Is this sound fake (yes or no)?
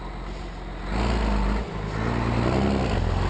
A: no